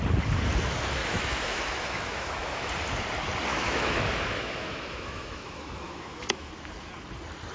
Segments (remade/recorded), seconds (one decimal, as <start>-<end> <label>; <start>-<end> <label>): 0.0-1.0 recorded; 1.0-2.7 remade; 2.7-3.5 recorded; 3.5-6.5 remade; 6.5-7.5 recorded